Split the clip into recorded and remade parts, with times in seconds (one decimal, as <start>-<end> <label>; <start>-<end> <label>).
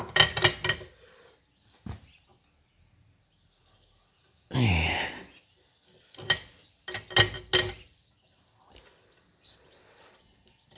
0.0-10.8 recorded